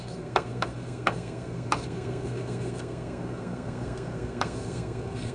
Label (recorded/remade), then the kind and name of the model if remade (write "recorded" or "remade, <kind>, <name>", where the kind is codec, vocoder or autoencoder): remade, codec, SNAC